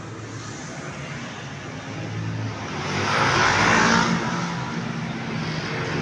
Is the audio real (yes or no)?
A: yes